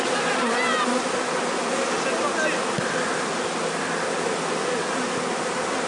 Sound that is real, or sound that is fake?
real